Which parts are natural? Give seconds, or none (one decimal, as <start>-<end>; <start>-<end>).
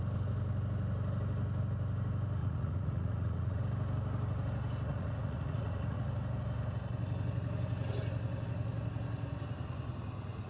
0.0-2.4; 3.6-4.9; 6.1-10.5